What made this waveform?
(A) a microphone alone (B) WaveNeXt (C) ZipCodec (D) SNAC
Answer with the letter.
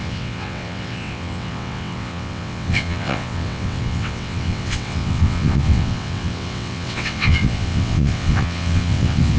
B